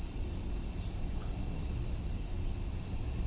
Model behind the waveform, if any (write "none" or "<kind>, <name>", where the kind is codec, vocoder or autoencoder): none